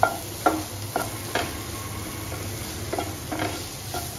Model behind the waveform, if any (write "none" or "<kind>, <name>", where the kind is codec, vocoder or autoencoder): none